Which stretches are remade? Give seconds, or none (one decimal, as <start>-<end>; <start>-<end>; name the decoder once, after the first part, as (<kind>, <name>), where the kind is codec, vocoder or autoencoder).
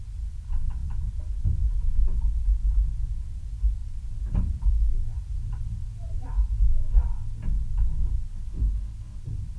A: 3.8-6.3 (vocoder, BigVGAN v2)